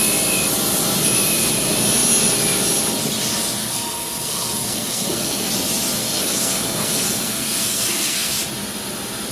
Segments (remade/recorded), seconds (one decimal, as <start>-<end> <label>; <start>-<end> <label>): 0.0-3.6 recorded; 3.6-5.5 remade; 5.5-6.0 recorded; 6.0-8.3 remade; 8.3-9.3 recorded